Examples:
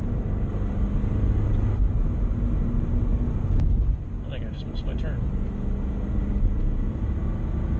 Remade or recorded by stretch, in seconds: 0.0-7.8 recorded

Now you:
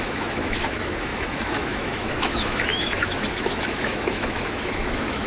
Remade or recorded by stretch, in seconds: 0.0-5.3 remade